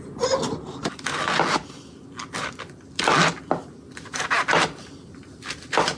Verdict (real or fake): real